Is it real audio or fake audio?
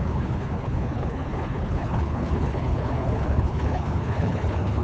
fake